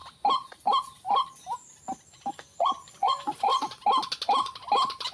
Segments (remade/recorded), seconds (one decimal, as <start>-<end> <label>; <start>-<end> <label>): 0.0-2.3 recorded; 2.3-3.5 remade; 3.5-5.1 recorded